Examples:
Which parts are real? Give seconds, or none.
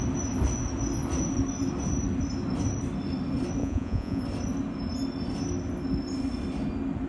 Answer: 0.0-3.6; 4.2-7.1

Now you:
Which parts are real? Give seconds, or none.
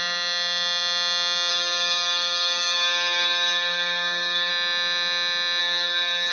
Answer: 0.0-1.5; 4.5-5.6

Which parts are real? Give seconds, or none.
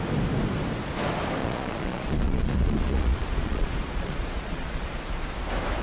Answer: 0.0-1.4; 4.9-5.8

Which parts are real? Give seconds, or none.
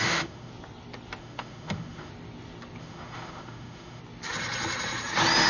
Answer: 0.5-1.2; 2.1-2.8; 4.0-5.5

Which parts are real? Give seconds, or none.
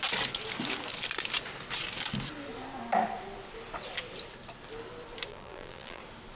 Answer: 0.0-5.3; 6.0-6.4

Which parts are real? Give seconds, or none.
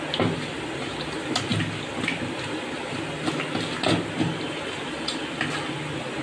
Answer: 0.0-6.2